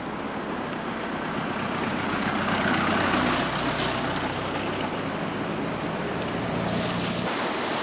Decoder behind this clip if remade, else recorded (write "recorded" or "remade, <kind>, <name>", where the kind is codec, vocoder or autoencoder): recorded